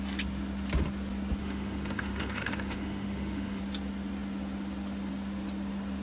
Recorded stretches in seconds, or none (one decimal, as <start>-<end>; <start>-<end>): 0.0-1.4; 3.6-6.0